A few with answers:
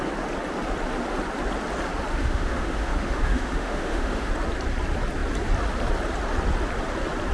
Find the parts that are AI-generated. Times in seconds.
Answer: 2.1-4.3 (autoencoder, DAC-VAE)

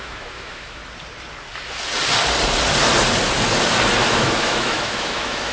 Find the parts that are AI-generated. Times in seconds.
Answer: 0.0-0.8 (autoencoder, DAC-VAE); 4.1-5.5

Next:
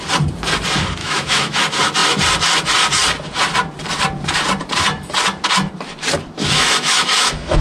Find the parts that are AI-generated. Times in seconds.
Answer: 1.0-1.6 (autoencoder, DAC-VAE); 6.4-7.6